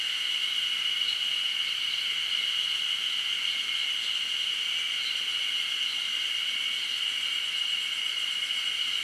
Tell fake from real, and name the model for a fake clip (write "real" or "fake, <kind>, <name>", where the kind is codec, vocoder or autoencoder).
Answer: real